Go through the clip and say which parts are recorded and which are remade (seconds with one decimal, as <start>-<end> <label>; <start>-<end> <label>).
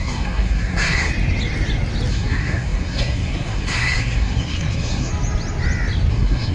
0.0-1.1 remade; 1.1-2.1 recorded; 2.1-5.1 remade; 5.1-6.1 recorded; 6.1-6.5 remade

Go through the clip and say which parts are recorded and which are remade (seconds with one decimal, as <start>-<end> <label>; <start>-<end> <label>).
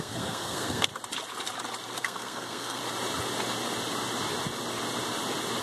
0.0-0.9 remade; 0.9-2.0 recorded; 2.0-2.8 remade; 2.8-5.6 recorded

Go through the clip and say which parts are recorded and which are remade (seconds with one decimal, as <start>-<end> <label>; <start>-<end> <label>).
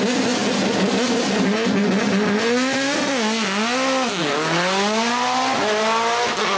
0.0-6.6 recorded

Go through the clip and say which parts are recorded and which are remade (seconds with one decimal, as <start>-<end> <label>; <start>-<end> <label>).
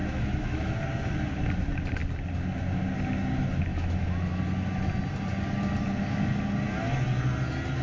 0.0-0.7 remade; 0.7-3.7 recorded; 3.7-4.4 remade; 4.4-7.8 recorded